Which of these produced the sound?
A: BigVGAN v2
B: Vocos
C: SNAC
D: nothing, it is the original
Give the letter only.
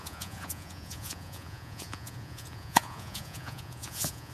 B